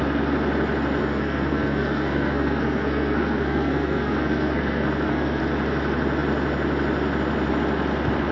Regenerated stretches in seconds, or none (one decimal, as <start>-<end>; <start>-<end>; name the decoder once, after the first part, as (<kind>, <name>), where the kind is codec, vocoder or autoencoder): 1.0-5.4 (codec, SNAC)